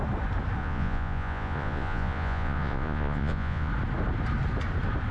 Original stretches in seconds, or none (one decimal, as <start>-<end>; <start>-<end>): 0.0-0.6; 3.7-5.1